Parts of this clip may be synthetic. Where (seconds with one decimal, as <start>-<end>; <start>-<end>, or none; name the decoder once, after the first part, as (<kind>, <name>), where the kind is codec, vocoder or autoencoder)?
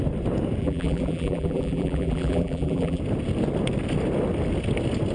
0.6-3.0 (vocoder, BigVGAN v2)